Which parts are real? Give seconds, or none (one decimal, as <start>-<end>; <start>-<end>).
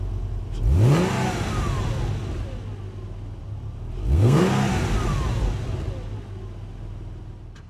0.0-4.0; 4.7-7.7